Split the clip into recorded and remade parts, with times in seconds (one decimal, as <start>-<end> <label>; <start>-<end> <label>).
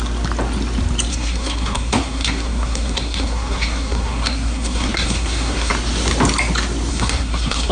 0.0-1.1 recorded; 1.1-5.7 remade; 5.7-6.9 recorded; 6.9-7.7 remade